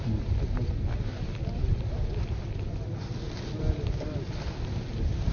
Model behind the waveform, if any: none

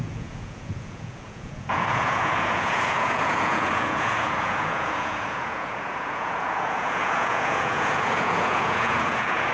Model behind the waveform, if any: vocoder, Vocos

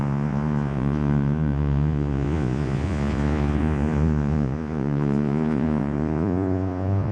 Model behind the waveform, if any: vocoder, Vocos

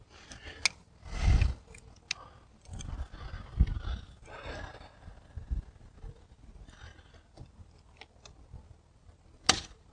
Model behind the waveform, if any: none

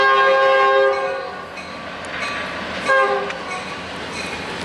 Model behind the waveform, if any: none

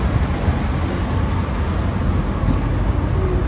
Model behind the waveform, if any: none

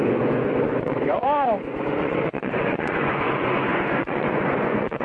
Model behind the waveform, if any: vocoder, Vocos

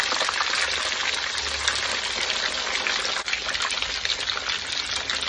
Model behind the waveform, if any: none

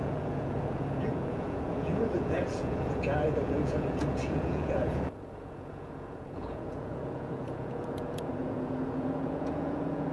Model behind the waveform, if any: vocoder, Vocos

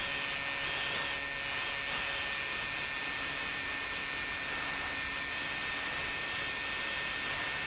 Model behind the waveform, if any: none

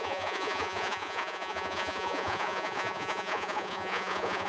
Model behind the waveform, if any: vocoder, Vocos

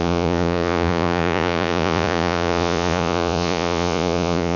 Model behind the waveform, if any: vocoder, Vocos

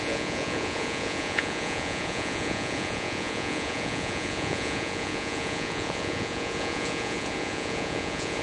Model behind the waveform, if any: vocoder, Vocos